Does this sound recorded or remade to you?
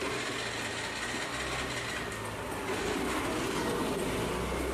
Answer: recorded